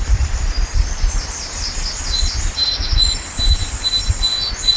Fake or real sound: real